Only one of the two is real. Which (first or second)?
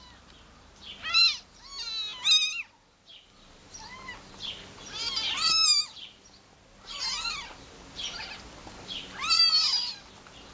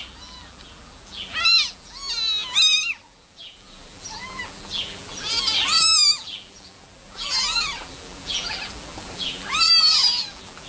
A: first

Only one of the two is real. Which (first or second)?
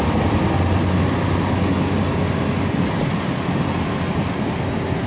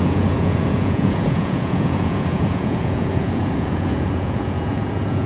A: first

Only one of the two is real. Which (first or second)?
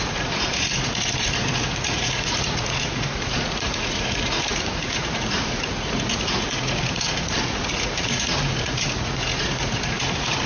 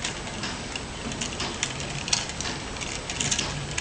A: second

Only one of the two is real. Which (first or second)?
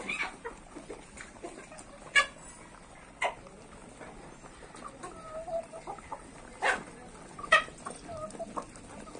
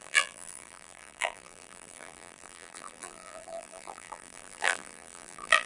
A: first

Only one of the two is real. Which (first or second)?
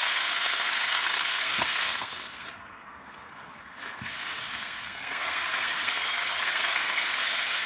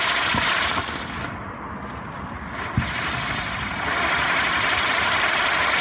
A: second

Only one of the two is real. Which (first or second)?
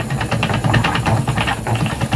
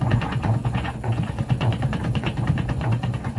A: first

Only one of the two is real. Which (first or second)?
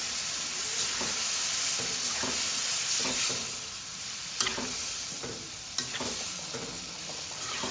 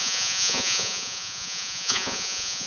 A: first